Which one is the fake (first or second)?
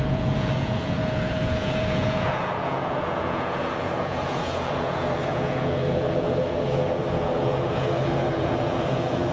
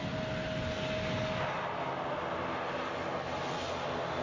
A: first